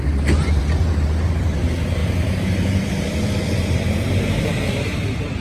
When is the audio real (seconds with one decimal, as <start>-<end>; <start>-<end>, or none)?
0.6-1.4